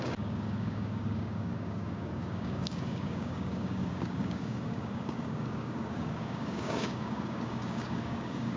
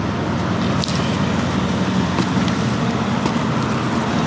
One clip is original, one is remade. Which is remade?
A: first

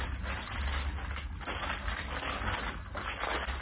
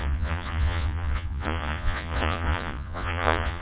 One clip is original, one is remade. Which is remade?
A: second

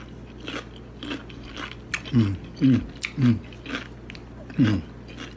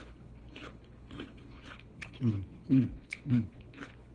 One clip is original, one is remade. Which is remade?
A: second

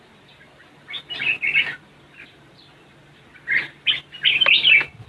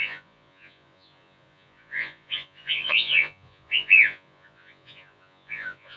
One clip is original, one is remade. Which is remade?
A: second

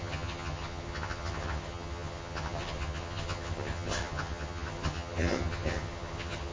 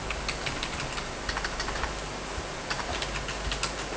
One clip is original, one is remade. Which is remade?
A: first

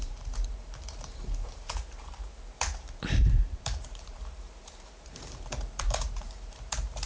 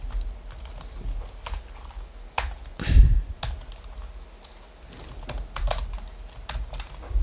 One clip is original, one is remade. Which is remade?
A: first